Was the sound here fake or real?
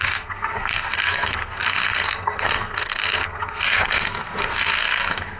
fake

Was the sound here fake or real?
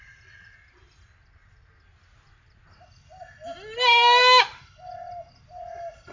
real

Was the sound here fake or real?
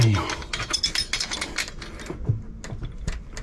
real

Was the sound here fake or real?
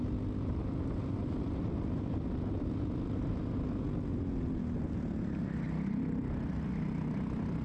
real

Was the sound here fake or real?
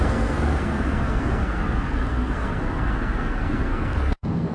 fake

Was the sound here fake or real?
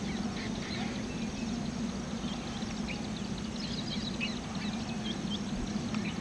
real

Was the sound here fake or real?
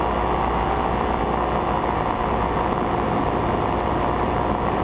real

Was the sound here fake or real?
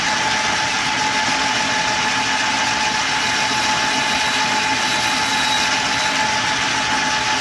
real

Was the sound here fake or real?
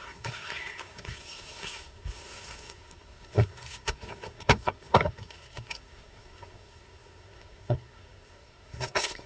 fake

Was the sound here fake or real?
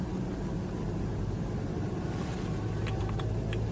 real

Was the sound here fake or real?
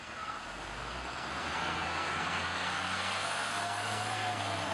fake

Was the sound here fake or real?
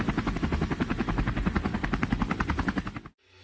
real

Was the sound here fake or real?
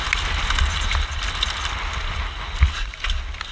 real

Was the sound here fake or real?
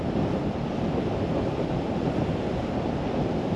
real